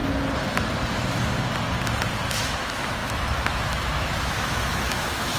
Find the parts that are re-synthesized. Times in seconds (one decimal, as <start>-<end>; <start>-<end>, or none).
2.3-5.4